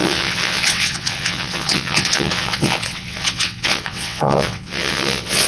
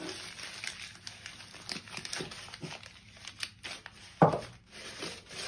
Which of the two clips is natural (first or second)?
second